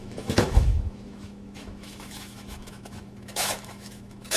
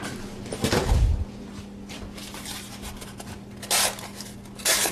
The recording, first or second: second